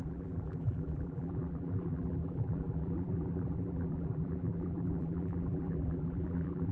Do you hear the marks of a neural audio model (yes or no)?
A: yes